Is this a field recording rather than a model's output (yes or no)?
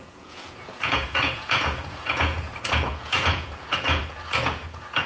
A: no